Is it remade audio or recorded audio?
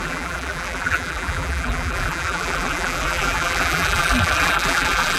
remade